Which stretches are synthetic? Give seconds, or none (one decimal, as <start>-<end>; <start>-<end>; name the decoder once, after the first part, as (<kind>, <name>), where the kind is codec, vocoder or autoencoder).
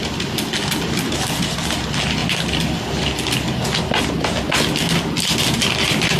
none